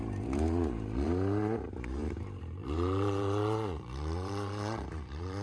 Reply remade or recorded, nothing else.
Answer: remade